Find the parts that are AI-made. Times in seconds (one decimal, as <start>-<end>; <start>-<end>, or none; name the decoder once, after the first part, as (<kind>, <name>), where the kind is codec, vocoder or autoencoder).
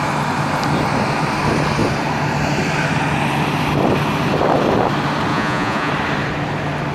5.3-5.9 (vocoder, Vocos)